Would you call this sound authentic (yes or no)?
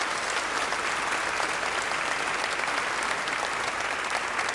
yes